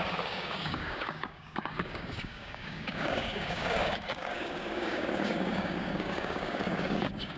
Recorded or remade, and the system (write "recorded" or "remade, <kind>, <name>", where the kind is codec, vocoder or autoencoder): remade, codec, DAC